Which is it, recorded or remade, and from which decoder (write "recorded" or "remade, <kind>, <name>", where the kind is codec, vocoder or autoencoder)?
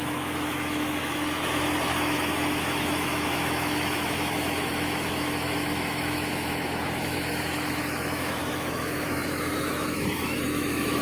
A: remade, autoencoder, DAC-VAE